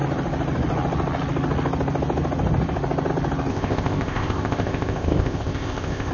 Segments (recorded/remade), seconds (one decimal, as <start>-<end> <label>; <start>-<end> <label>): 0.0-3.5 recorded; 3.5-6.1 remade